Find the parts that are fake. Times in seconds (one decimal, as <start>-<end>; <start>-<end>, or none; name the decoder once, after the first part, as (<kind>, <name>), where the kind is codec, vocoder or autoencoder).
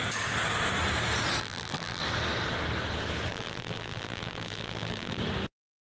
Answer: 1.4-2.0 (vocoder, BigVGAN v2); 3.3-5.2